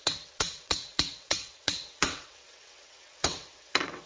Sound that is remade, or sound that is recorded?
remade